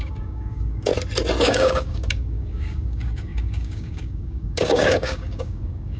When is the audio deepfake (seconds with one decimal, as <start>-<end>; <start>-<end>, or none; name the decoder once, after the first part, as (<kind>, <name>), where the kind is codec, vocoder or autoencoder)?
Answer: 0.0-0.9 (codec, DAC); 1.4-6.0